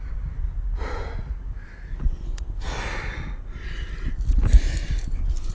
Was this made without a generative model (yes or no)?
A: yes